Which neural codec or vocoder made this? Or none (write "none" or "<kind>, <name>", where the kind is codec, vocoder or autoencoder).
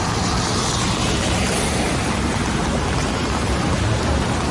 none